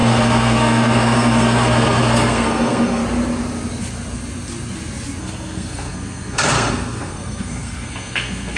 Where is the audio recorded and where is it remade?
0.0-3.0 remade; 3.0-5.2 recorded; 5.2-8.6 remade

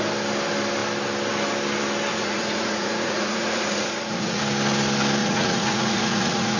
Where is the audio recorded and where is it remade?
0.0-2.1 recorded; 2.1-4.4 remade; 4.4-5.2 recorded; 5.2-6.6 remade

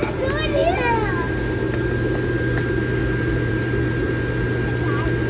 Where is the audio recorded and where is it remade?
0.0-5.3 recorded

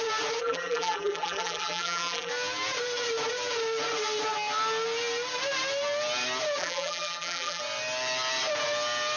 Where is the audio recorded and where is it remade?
0.0-0.4 recorded; 0.4-2.3 remade; 2.3-6.6 recorded; 6.6-7.6 remade; 7.6-9.2 recorded

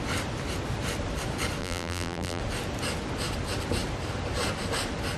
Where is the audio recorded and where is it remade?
0.0-1.6 recorded; 1.6-2.4 remade; 2.4-5.2 recorded